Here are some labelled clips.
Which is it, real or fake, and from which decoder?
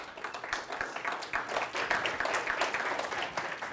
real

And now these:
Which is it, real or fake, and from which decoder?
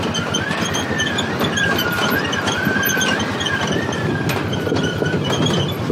real